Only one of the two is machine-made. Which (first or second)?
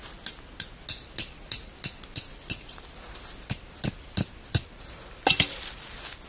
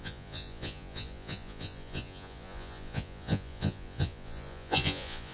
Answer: second